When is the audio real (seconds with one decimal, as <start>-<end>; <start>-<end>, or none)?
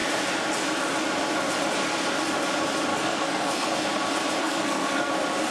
0.0-2.9; 3.7-4.4; 5.1-5.5